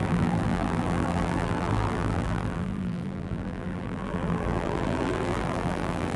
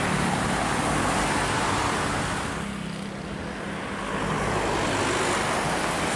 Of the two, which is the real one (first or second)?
second